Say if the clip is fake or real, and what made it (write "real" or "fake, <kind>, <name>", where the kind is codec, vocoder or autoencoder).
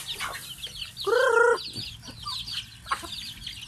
real